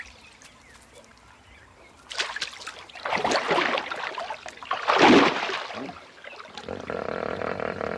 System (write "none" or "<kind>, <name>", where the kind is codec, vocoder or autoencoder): none